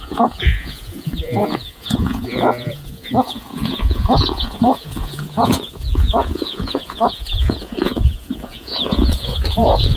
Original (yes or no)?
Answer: no